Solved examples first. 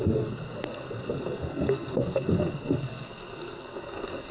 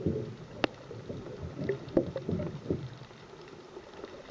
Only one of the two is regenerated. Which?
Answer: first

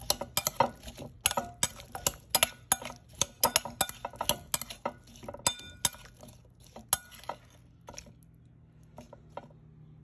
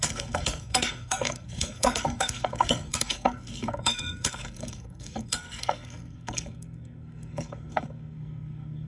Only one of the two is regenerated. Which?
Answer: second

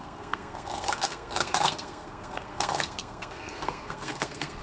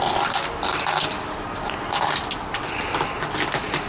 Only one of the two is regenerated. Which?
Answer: first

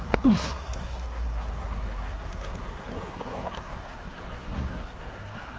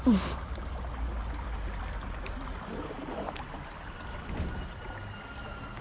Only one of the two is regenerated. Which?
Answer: first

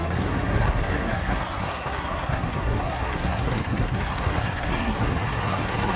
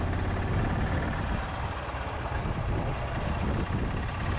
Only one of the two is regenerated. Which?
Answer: first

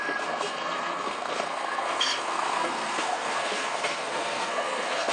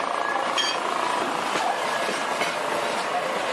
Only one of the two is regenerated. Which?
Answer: first